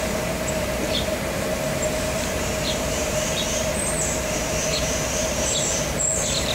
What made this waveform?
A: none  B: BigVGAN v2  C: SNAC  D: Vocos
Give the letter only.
B